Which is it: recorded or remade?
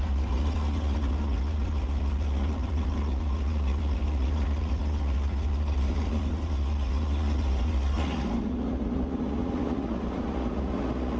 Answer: remade